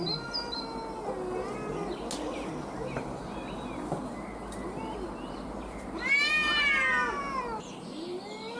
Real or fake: real